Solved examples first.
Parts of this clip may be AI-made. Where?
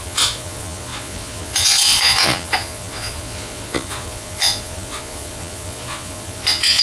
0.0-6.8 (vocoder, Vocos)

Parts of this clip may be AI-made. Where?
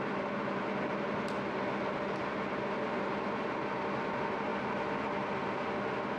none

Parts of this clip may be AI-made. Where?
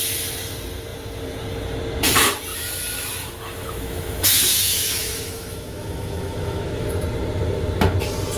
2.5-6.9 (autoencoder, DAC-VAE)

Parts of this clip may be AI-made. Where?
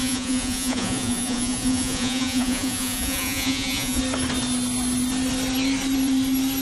0.0-4.0 (vocoder, Vocos)